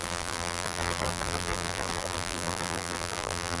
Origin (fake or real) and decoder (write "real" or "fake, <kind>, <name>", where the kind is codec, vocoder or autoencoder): fake, vocoder, BigVGAN v2